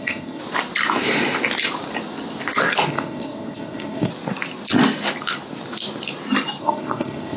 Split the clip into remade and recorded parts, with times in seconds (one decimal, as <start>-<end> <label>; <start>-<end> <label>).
0.0-0.4 remade; 0.4-2.9 recorded; 2.9-4.1 remade; 4.1-6.6 recorded; 6.6-7.4 remade

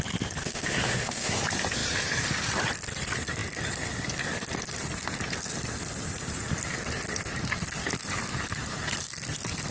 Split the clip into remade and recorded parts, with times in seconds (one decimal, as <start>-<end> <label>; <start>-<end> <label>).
0.0-0.4 recorded; 0.4-1.4 remade; 1.4-9.7 recorded

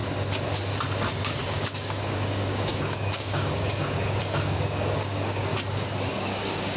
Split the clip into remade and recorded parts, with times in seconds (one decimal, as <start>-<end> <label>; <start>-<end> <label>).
0.0-1.2 recorded; 1.2-5.5 remade; 5.5-6.1 recorded; 6.1-6.8 remade

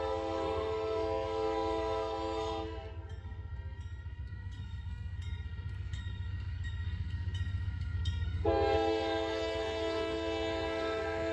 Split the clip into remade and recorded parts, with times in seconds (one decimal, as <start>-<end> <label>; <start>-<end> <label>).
0.0-11.3 remade